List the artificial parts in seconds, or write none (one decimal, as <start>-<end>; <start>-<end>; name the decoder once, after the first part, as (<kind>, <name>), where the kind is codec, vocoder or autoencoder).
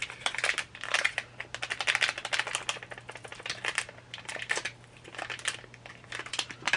none